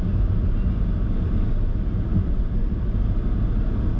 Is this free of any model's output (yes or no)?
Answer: yes